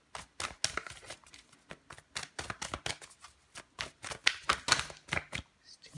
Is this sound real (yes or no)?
yes